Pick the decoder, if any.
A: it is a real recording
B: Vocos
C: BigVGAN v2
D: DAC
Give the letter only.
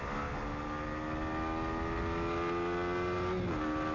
A